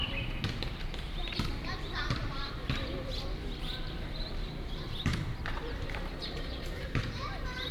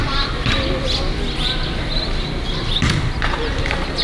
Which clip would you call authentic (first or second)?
second